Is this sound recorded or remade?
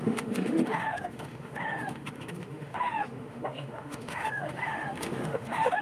remade